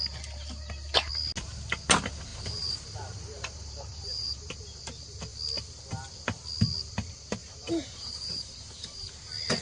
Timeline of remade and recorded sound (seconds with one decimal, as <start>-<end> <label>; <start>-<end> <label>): 0.0-2.3 recorded; 2.3-4.5 remade; 4.5-7.4 recorded; 7.4-9.1 remade; 9.1-9.6 recorded